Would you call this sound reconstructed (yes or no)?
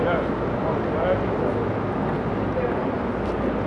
no